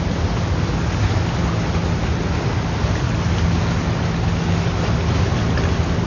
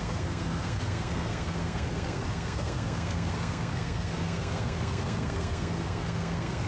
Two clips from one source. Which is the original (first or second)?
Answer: first